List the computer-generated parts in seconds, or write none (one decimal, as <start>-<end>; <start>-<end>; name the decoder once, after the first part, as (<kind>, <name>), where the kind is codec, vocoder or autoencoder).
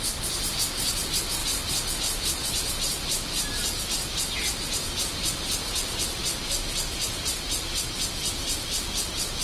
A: none